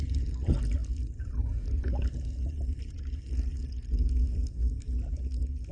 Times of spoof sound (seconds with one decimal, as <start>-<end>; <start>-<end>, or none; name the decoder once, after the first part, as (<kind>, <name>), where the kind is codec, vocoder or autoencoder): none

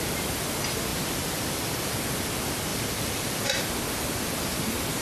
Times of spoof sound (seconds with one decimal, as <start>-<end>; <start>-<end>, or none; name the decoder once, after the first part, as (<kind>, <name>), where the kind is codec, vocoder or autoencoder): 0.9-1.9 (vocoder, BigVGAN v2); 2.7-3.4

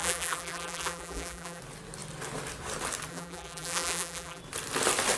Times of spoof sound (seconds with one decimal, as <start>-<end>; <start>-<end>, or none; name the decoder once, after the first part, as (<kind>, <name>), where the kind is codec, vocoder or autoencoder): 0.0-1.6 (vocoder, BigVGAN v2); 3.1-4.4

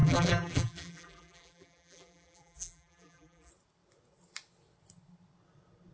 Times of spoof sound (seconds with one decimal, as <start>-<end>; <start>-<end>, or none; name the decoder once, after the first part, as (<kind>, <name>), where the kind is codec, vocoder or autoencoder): 0.0-3.5 (vocoder, BigVGAN v2)